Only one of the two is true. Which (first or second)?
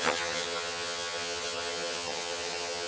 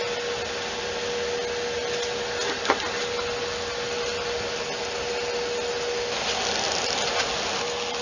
second